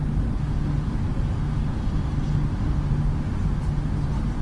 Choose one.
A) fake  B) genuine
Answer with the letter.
B